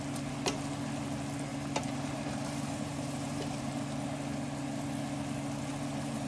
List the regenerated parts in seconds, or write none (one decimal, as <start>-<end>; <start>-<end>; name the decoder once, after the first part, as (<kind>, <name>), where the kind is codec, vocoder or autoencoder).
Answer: 1.5-3.7 (vocoder, BigVGAN v2)